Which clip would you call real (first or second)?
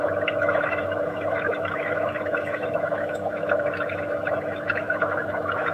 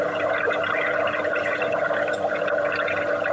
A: second